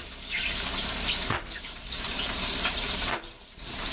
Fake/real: fake